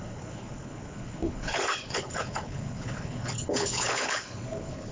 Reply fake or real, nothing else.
fake